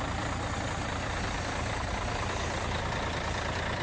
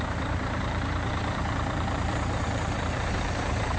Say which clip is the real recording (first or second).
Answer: first